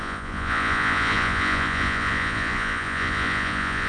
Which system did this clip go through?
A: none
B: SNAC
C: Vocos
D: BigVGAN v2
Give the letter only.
C